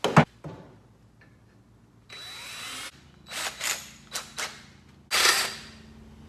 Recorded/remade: recorded